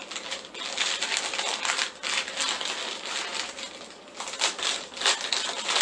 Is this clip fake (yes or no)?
no